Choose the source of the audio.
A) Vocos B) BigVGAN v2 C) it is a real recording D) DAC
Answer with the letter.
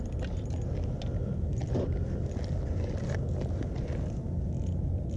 C